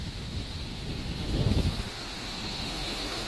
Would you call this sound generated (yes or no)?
yes